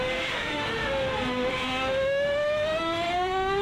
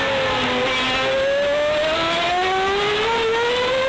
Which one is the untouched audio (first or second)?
second